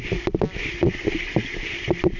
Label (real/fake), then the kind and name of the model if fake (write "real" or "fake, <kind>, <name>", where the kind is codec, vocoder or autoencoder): real